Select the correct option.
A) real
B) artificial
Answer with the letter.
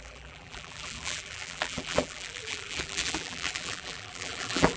B